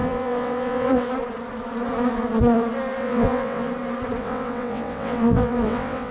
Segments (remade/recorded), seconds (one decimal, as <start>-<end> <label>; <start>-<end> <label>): 0.0-1.1 remade; 1.1-3.0 recorded; 3.0-3.7 remade; 3.7-4.2 recorded; 4.2-6.1 remade